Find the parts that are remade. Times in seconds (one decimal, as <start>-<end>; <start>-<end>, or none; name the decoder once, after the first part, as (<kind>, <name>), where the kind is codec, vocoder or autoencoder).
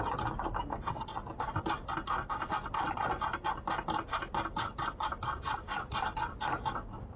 none